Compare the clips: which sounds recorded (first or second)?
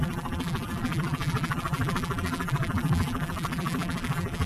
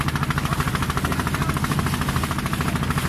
second